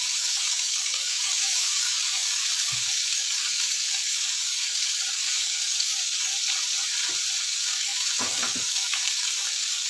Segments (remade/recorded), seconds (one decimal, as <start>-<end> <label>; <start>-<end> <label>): 0.0-6.3 remade; 6.3-7.4 recorded; 7.4-9.9 remade